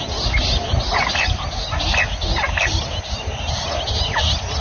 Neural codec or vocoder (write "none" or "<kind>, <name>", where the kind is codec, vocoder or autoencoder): none